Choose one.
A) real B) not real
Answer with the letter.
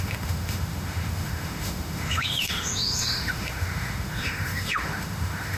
B